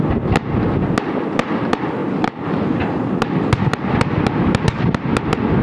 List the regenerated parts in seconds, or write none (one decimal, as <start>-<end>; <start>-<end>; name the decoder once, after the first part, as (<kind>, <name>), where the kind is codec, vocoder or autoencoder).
none